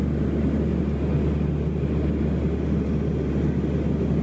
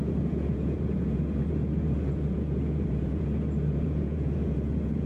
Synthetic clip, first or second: second